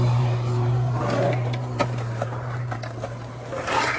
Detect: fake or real fake